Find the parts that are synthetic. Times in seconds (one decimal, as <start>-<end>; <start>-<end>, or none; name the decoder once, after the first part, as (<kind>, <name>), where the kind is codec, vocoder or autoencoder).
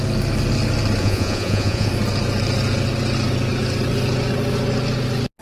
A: 1.0-1.9 (vocoder, Vocos)